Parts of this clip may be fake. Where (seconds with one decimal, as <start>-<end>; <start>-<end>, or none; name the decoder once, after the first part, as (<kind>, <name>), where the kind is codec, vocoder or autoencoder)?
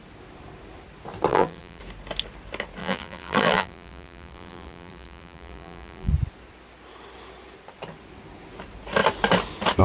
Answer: 1.3-1.8 (vocoder, BigVGAN v2); 2.8-6.1